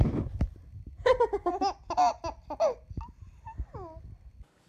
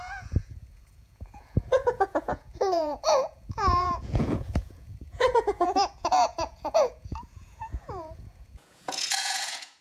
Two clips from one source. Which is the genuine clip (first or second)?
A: first